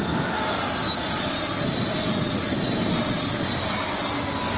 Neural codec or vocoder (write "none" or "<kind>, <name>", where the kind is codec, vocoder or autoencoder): none